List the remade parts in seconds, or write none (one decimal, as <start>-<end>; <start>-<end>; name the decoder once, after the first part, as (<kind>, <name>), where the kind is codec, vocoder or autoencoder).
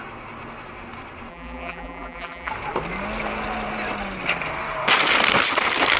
1.3-2.5 (vocoder, BigVGAN v2)